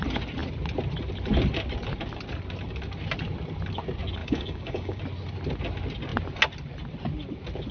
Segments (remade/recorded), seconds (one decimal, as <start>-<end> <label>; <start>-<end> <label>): 0.0-4.2 recorded; 4.2-5.0 remade; 5.0-7.7 recorded